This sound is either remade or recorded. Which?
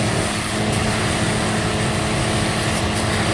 recorded